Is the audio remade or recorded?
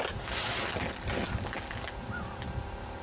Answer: recorded